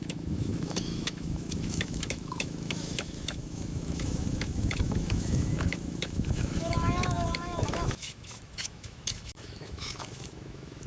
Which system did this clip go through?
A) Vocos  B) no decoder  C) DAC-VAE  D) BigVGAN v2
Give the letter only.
C